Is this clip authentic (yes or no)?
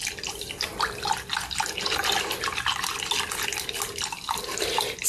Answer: yes